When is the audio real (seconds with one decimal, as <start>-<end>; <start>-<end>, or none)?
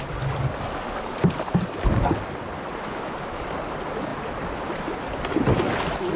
0.0-6.2